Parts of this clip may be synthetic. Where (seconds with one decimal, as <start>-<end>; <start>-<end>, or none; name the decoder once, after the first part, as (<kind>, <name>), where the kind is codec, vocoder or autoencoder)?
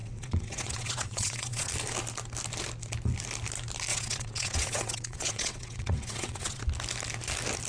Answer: 0.0-1.7 (vocoder, WaveNeXt); 3.9-6.6